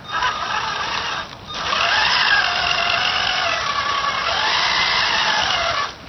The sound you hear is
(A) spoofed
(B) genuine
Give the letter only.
B